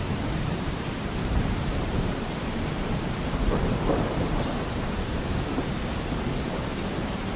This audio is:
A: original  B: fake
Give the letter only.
B